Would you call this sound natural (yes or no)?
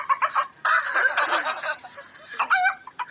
yes